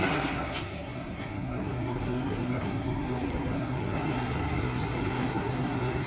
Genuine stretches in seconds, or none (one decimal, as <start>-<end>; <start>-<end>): none